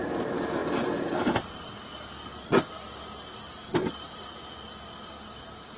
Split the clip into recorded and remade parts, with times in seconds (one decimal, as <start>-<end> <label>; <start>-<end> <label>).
0.0-5.8 recorded